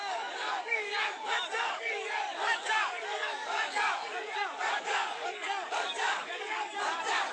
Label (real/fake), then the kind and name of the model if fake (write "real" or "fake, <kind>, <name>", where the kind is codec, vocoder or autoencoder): fake, codec, DAC